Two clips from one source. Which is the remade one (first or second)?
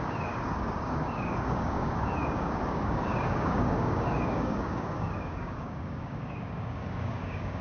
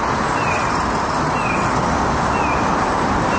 first